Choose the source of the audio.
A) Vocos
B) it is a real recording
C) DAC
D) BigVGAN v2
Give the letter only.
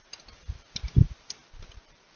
B